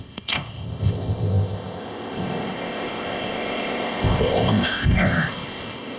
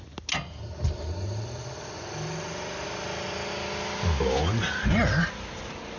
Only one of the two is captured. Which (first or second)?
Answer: second